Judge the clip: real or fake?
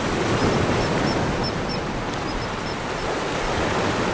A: real